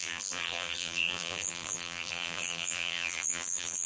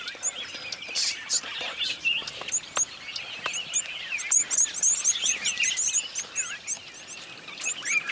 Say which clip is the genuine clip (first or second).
second